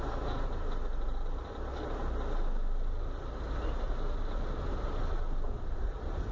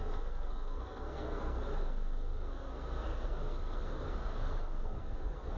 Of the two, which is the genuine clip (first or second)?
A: first